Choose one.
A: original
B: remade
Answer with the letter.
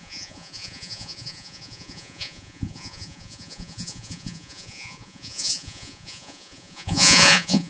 B